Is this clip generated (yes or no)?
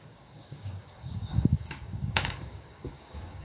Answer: yes